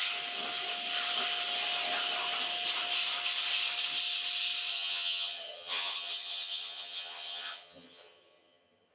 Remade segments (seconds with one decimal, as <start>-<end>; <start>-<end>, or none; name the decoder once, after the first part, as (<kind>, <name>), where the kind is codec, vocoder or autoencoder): 4.7-8.9 (vocoder, HiFi-GAN)